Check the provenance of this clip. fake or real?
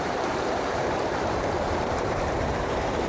fake